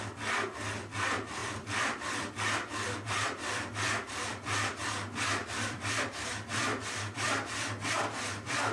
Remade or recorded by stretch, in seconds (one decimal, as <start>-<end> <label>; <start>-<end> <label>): 0.0-1.4 recorded; 1.4-2.3 remade; 2.3-5.4 recorded; 5.4-6.0 remade; 6.0-8.7 recorded